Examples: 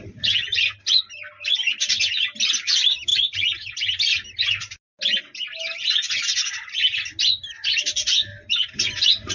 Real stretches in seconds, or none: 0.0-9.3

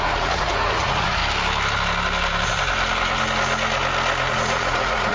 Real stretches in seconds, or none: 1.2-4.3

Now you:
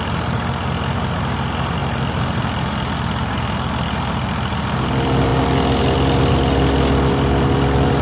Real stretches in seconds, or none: 0.0-8.0

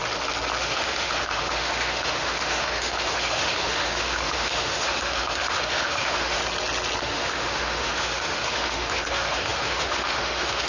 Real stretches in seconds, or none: 0.0-0.6; 6.4-7.0